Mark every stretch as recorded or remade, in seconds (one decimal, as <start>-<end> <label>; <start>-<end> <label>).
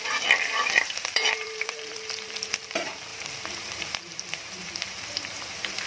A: 0.0-5.9 remade